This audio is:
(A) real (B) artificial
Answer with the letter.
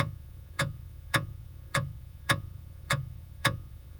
B